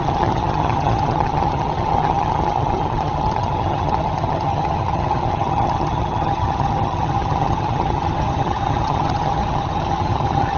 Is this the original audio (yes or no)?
no